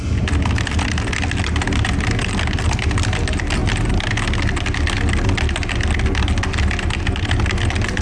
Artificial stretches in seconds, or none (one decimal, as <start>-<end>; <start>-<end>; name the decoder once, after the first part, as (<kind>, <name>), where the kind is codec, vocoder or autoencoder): none

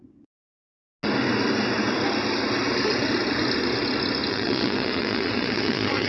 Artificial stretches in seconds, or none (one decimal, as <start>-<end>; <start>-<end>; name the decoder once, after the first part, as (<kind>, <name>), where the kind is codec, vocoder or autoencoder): 0.0-0.6 (vocoder, WaveNeXt); 4.3-6.1

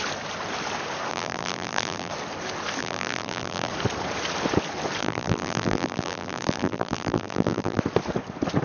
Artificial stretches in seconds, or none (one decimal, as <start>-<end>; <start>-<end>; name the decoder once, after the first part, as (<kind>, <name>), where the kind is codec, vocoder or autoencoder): 1.1-2.1 (vocoder, BigVGAN v2); 2.8-3.7; 5.0-7.8

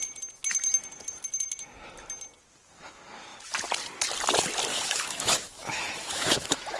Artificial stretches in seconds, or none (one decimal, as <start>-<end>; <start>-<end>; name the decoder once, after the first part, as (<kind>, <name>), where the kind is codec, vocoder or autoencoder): 4.7-6.8 (autoencoder, DAC-VAE)